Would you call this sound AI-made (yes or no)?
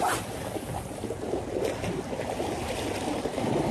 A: no